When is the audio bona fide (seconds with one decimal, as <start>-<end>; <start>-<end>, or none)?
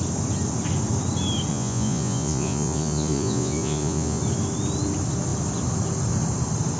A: 0.0-1.5; 4.2-6.8